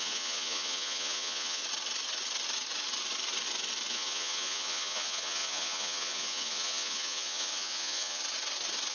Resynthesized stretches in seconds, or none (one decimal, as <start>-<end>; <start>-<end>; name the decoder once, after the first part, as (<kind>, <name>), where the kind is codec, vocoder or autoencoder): 0.0-1.6 (vocoder, Vocos); 3.9-8.2